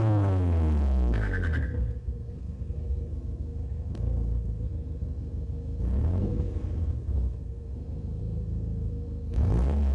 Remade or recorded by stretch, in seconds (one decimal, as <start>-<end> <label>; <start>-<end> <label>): 0.0-9.9 remade